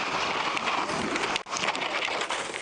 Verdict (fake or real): real